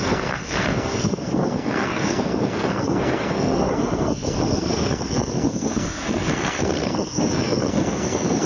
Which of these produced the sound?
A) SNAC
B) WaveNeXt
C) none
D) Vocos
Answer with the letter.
A